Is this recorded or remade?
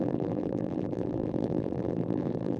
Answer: remade